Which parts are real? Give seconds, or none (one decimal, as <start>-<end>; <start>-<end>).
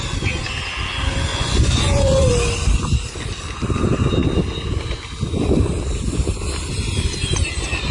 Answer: 0.0-1.3; 2.3-7.9